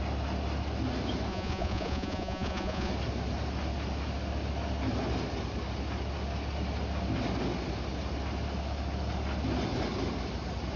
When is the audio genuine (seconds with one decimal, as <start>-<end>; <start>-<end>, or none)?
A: 0.0-1.3; 2.9-10.8